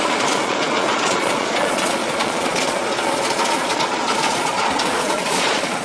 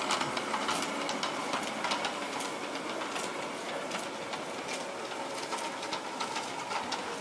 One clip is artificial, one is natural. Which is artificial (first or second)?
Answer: first